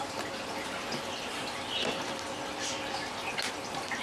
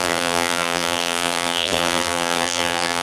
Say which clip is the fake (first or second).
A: second